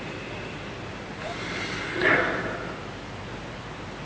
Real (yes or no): yes